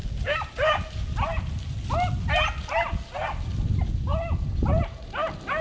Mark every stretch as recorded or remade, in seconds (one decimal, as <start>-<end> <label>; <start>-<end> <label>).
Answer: 0.0-5.6 recorded